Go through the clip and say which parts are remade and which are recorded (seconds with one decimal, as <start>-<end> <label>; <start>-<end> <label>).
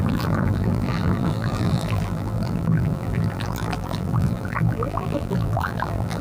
0.0-6.2 remade